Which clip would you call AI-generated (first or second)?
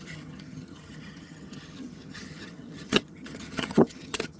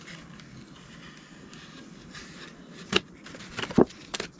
first